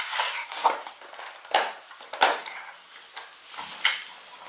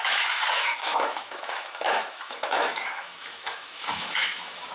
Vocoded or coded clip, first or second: second